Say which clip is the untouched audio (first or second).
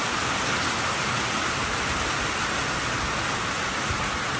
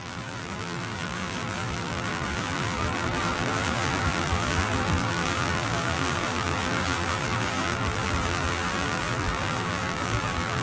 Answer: first